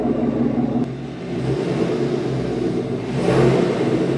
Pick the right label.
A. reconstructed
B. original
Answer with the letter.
B